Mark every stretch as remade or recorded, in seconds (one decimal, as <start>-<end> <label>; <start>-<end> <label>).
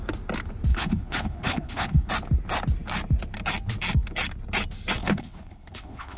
0.0-0.7 recorded; 0.7-2.1 remade; 2.1-5.0 recorded; 5.0-6.2 remade